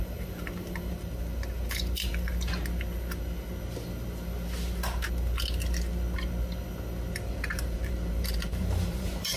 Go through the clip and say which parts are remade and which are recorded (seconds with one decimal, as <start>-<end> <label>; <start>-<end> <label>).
0.0-2.1 remade; 2.1-7.3 recorded; 7.3-9.4 remade